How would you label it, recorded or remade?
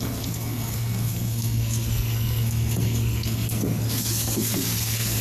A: remade